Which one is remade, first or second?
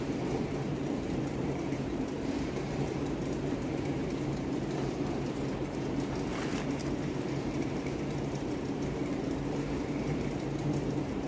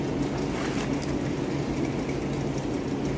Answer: first